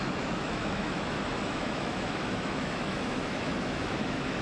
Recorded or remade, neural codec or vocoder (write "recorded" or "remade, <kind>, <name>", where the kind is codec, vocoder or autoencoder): remade, autoencoder, DAC-VAE